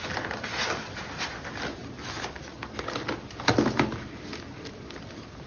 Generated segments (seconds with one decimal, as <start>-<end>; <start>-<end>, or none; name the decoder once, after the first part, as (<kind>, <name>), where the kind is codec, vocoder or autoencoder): none

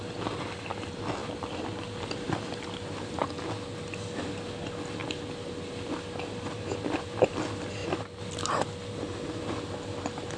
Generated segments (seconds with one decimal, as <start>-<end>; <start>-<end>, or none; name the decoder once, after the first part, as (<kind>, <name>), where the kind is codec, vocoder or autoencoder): 1.2-3.4 (vocoder, BigVGAN v2); 7.8-8.4

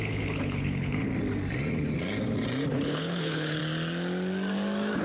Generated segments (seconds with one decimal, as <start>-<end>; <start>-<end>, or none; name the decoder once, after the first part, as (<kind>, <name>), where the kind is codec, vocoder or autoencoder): 0.0-1.1 (codec, HILCodec); 2.7-3.6

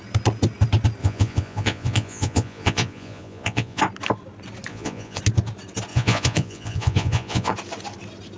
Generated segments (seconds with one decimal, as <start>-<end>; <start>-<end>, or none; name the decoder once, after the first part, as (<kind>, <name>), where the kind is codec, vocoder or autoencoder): 1.0-3.8 (vocoder, Vocos); 4.7-5.2; 5.9-7.5

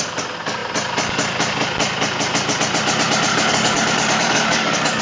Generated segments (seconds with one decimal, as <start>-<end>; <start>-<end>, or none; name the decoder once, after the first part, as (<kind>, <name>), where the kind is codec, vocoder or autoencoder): 3.3-5.0 (codec, DAC)

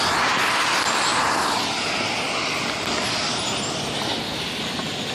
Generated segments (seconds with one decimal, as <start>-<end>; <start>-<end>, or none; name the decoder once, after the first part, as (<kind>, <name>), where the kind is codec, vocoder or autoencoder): none

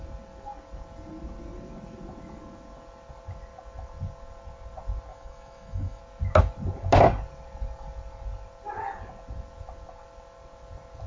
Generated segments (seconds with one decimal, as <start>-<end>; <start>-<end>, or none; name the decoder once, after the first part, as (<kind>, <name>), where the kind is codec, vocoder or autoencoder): 5.1-6.0 (autoencoder, DAC-VAE)

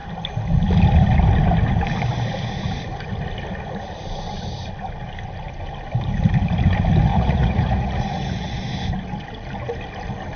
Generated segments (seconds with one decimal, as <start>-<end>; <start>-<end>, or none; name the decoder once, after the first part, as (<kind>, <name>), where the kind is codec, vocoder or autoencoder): 7.1-8.6 (vocoder, Vocos)